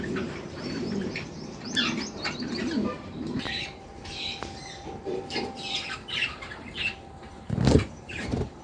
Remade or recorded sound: remade